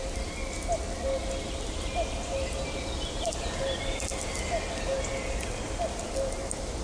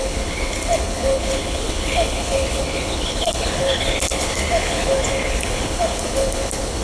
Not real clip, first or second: second